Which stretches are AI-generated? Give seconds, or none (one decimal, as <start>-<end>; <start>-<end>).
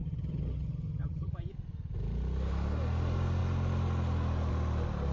0.0-1.3